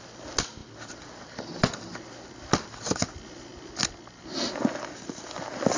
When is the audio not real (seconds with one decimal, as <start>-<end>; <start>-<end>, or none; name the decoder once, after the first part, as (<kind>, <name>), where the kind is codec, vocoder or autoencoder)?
none